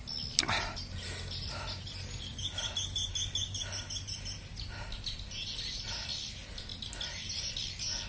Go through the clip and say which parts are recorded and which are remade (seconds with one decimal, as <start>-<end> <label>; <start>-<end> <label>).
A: 0.0-2.3 recorded; 2.3-3.1 remade; 3.1-6.7 recorded; 6.7-7.5 remade; 7.5-8.1 recorded